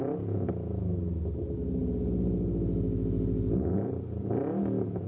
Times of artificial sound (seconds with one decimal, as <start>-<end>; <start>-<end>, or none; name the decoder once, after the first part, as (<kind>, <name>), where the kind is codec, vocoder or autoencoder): none